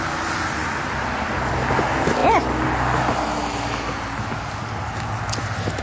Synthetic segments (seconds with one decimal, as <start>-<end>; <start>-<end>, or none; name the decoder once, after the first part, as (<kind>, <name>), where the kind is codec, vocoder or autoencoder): 0.6-1.5 (vocoder, BigVGAN v2)